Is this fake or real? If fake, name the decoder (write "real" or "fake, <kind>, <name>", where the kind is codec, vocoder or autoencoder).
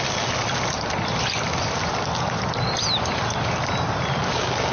real